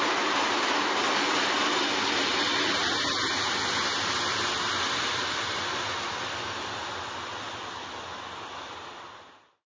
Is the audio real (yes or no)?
yes